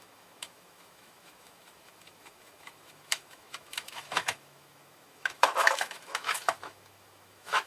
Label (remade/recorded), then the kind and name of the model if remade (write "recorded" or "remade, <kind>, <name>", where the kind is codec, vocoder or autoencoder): remade, autoencoder, DAC-VAE